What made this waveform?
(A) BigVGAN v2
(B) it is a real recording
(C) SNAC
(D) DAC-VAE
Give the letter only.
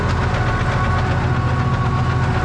B